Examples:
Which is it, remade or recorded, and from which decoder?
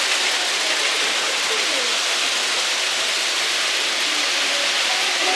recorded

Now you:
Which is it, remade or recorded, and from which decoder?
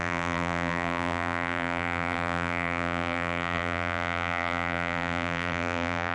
remade, vocoder, BigVGAN v2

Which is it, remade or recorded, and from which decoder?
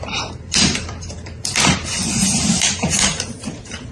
remade, vocoder, BigVGAN v2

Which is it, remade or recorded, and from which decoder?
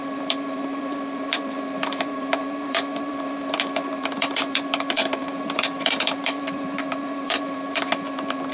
remade, vocoder, BigVGAN v2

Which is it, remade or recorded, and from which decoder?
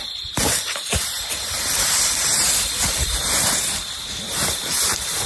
remade, vocoder, BigVGAN v2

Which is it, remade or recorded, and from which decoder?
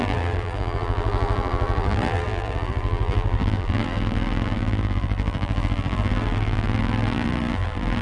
remade, vocoder, BigVGAN v2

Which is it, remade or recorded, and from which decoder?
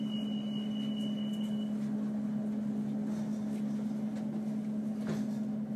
recorded